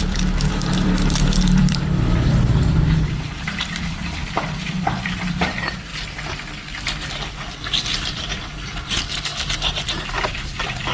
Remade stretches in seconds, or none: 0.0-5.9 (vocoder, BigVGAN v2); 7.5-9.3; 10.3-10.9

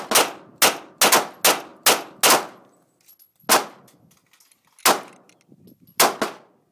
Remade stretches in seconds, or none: none

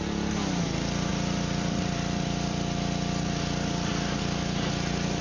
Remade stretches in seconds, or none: 1.1-4.2 (vocoder, BigVGAN v2)

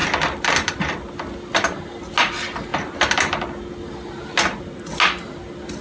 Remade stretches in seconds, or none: none